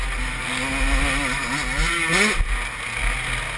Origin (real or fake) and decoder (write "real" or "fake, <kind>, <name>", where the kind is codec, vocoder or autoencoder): real